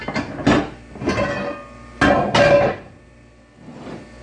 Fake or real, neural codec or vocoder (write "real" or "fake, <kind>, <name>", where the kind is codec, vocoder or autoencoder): real